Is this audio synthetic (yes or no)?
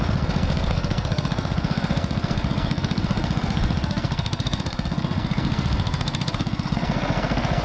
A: yes